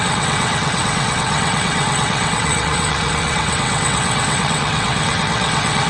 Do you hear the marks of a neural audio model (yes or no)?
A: yes